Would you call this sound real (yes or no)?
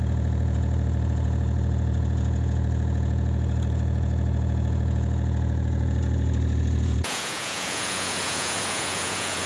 no